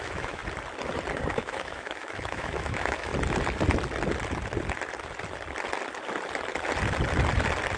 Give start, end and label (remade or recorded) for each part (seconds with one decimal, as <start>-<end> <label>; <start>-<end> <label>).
0.0-0.4 remade; 0.4-1.3 recorded; 1.3-3.1 remade; 3.1-7.8 recorded